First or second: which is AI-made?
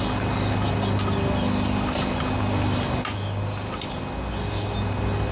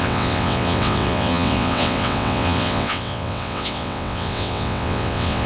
second